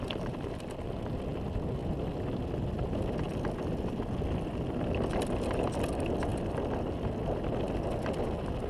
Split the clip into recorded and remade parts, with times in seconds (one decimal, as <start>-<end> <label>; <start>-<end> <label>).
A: 0.0-8.7 recorded